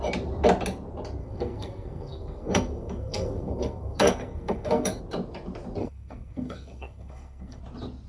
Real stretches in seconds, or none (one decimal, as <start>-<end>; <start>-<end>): 0.0-1.2; 5.0-5.8; 7.6-8.1